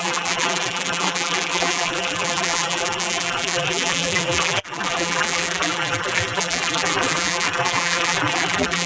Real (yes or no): no